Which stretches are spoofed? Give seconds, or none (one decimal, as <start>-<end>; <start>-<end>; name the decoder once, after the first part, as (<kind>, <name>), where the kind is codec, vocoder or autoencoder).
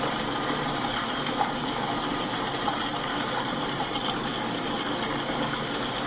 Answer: 0.0-4.3 (vocoder, BigVGAN v2)